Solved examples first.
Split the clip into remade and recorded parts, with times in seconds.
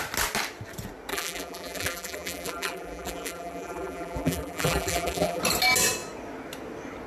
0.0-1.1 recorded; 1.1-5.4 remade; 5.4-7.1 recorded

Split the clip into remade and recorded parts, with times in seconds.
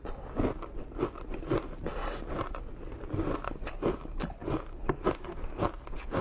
0.0-2.0 recorded; 2.0-2.6 remade; 2.6-6.2 recorded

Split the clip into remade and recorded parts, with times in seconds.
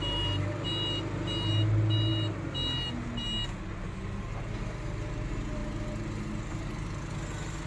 0.0-7.7 recorded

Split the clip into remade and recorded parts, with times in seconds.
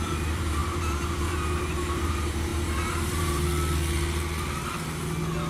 0.0-3.5 remade; 3.5-5.5 recorded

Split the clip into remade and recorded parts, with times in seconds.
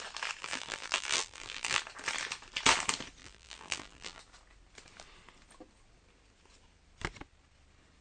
0.0-0.4 recorded; 0.4-1.8 remade; 1.8-3.2 recorded; 3.2-4.2 remade; 4.2-8.0 recorded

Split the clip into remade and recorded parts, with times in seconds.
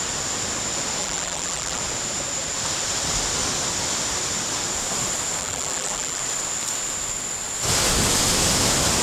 0.0-1.0 recorded; 1.0-1.8 remade; 1.8-5.4 recorded; 5.4-6.2 remade; 6.2-9.0 recorded